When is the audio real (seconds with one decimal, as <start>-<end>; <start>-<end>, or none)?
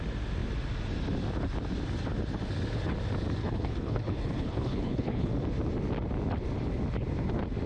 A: 0.0-3.4; 5.3-7.7